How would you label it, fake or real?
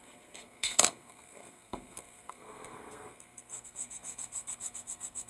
fake